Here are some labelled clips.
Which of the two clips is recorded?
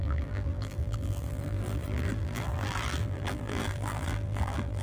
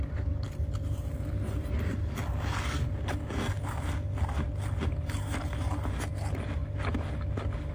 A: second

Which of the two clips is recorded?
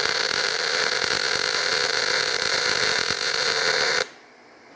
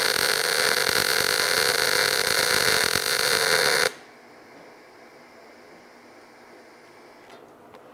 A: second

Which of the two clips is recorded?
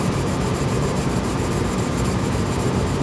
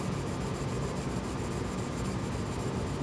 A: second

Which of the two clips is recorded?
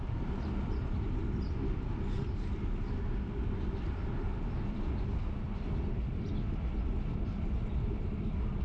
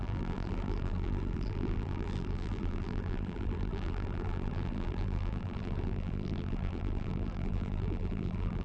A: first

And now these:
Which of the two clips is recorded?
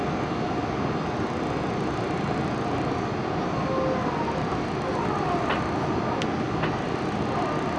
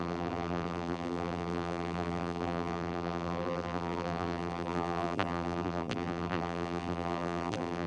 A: first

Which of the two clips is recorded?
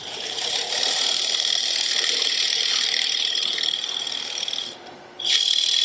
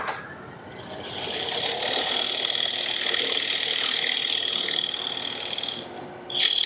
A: second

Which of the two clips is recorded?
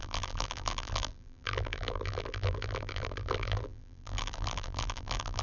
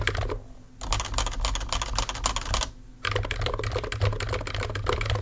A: second